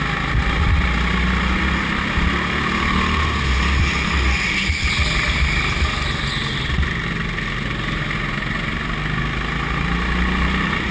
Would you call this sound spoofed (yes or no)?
no